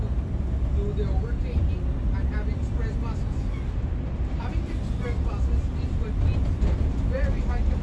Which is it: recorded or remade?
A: recorded